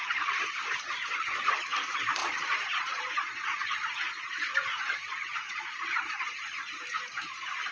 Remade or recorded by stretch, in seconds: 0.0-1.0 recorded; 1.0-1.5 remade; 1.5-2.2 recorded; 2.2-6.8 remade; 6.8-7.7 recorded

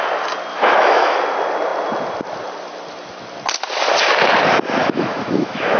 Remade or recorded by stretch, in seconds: 0.0-0.5 recorded; 0.5-1.2 remade; 1.2-4.8 recorded; 4.8-5.8 remade

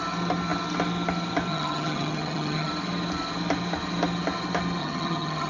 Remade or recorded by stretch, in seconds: 0.0-1.5 recorded; 1.5-2.7 remade; 2.7-4.8 recorded; 4.8-5.5 remade

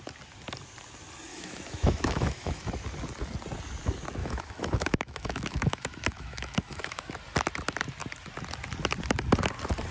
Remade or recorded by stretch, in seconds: 0.0-1.3 recorded; 1.3-2.7 remade; 2.7-4.2 recorded; 4.2-7.0 remade; 7.0-9.9 recorded

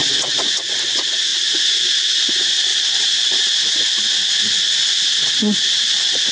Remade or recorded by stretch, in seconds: 0.0-2.7 remade; 2.7-6.3 recorded

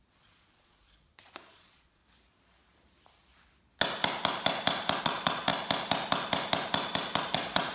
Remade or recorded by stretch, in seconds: 0.0-2.0 remade; 2.0-5.0 recorded; 5.0-5.5 remade; 5.5-7.2 recorded; 7.2-7.7 remade

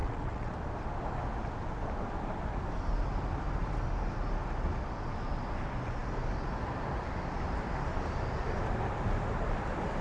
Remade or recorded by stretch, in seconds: 0.0-0.5 remade; 0.5-10.0 recorded

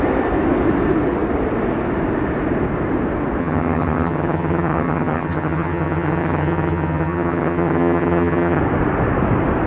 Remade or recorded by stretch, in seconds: 0.0-3.4 recorded; 3.4-8.6 remade; 8.6-9.7 recorded